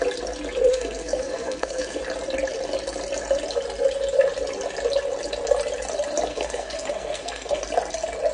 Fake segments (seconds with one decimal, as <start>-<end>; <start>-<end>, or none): 0.7-2.0; 6.3-7.6